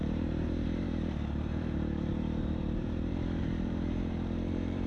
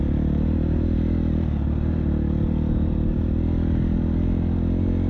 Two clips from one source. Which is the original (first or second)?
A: second